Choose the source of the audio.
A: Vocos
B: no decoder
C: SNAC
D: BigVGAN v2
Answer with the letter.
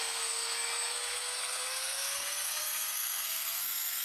C